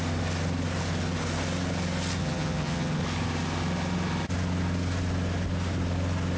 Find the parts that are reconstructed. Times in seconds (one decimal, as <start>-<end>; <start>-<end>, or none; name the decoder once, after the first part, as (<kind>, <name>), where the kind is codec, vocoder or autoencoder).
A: 2.2-3.0 (vocoder, HiFi-GAN)